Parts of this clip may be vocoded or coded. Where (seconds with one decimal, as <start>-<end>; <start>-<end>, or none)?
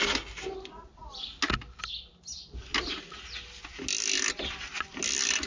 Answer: none